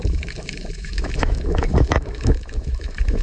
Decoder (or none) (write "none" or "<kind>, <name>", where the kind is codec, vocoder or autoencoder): autoencoder, DAC-VAE